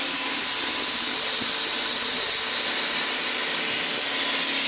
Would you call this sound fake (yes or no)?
no